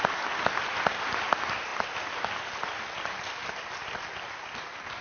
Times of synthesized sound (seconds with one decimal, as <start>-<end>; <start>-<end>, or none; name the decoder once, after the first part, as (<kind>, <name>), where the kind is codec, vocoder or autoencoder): none